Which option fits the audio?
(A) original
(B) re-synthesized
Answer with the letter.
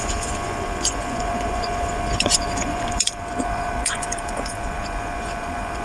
B